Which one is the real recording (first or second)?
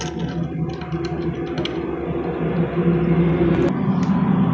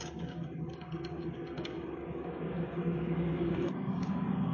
first